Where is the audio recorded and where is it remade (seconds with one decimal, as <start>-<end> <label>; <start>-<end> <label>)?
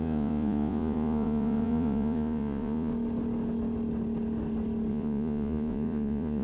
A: 0.0-2.9 remade; 2.9-4.9 recorded; 4.9-6.4 remade